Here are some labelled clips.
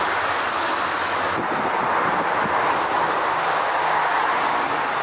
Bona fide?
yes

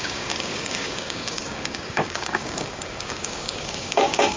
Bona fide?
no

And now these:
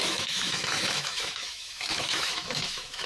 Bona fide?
no